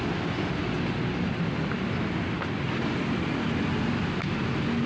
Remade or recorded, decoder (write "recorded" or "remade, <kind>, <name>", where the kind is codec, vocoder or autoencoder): recorded